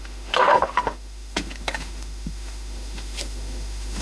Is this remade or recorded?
remade